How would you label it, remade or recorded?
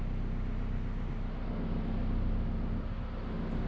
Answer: recorded